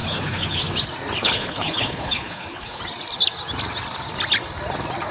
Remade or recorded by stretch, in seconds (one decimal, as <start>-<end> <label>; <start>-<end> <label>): 0.0-0.6 remade; 0.6-1.2 recorded; 1.2-2.8 remade; 2.8-5.1 recorded